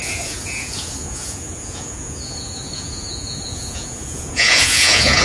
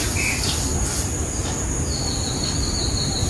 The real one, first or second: second